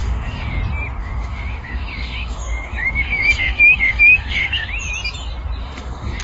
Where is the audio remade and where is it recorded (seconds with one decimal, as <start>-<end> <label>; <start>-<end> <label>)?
0.0-0.6 remade; 0.6-1.0 recorded; 1.0-4.7 remade; 4.7-5.6 recorded; 5.6-6.2 remade